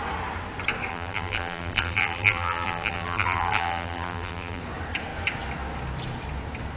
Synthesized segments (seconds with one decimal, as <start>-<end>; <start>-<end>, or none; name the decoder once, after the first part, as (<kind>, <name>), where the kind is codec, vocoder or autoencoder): 0.9-4.6 (vocoder, BigVGAN v2)